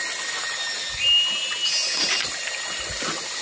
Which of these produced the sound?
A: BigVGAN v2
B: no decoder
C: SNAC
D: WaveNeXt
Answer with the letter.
B